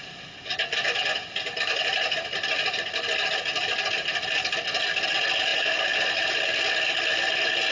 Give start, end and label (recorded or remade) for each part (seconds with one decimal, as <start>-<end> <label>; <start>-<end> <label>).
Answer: 0.0-3.1 remade; 3.1-5.5 recorded; 5.5-6.3 remade; 6.3-7.7 recorded